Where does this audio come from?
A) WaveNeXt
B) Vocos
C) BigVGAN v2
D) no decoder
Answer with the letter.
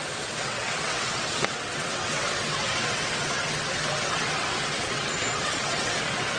A